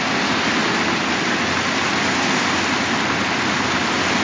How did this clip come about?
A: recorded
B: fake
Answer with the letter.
A